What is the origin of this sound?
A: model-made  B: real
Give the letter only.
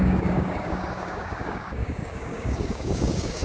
A